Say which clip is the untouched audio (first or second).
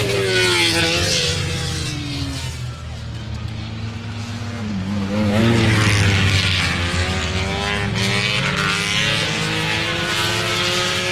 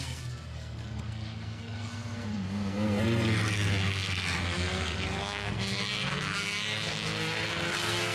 first